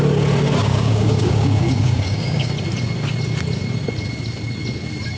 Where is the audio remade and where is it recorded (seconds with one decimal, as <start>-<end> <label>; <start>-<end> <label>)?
0.0-0.6 recorded; 0.6-2.5 remade; 2.5-5.2 recorded